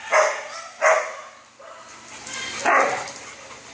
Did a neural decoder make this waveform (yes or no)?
no